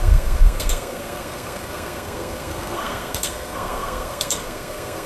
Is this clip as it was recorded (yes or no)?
no